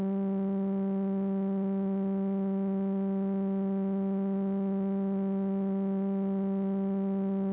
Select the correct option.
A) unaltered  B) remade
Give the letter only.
A